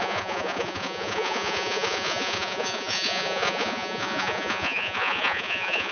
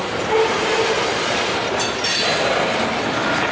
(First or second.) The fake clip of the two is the first